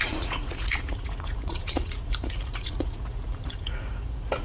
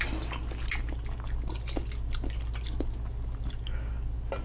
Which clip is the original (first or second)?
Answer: second